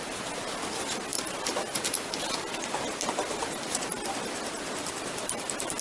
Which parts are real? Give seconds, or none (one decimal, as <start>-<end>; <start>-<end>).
0.0-5.8